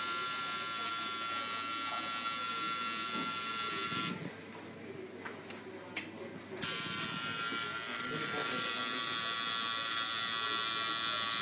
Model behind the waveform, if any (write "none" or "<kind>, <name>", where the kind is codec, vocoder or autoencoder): none